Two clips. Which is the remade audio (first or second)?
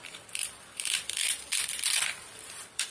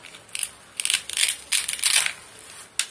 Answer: first